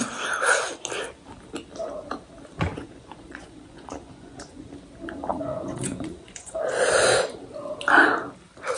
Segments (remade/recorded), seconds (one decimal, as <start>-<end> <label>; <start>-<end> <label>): 0.0-2.7 recorded; 2.7-4.7 remade; 4.7-5.3 recorded; 5.3-6.7 remade; 6.7-8.8 recorded